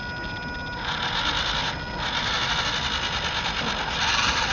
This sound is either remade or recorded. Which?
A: recorded